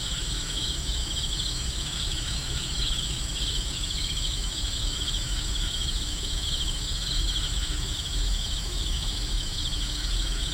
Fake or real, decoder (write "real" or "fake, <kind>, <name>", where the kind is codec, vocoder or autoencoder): fake, autoencoder, DAC-VAE